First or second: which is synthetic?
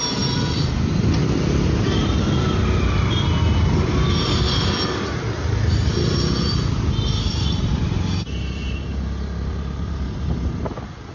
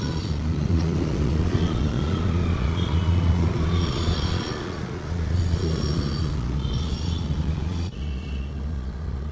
second